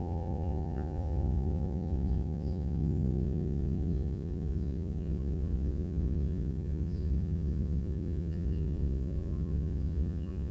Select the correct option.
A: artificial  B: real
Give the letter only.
A